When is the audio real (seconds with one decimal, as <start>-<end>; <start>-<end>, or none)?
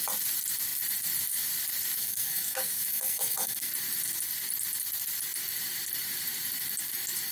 0.0-2.0; 3.7-7.3